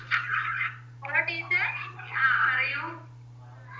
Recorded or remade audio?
recorded